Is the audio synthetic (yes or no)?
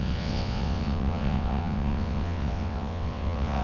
yes